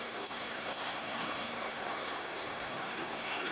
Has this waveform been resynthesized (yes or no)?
yes